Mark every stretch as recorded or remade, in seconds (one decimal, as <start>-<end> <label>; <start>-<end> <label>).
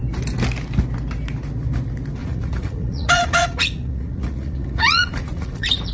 0.0-2.2 recorded; 2.2-5.9 remade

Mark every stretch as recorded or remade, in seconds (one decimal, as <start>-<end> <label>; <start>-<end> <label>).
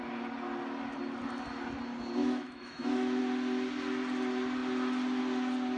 0.0-2.2 recorded; 2.2-3.2 remade; 3.2-5.8 recorded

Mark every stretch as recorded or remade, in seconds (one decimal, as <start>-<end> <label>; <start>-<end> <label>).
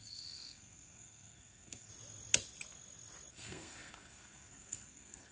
0.0-1.9 remade; 1.9-3.3 recorded; 3.3-5.3 remade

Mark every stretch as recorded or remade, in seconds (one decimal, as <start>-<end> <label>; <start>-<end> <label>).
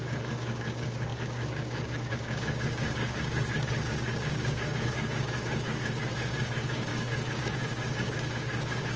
0.0-9.0 remade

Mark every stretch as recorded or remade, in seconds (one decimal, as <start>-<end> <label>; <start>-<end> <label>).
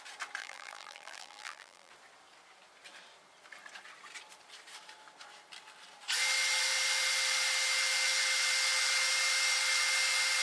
0.0-0.4 recorded; 0.4-1.9 remade; 1.9-10.4 recorded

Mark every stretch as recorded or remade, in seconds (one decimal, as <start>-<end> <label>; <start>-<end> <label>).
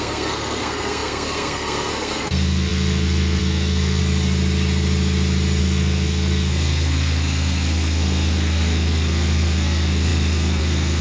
0.0-4.0 remade; 4.0-5.6 recorded; 5.6-11.0 remade